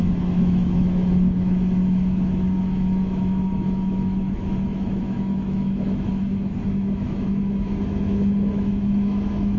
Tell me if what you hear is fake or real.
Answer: fake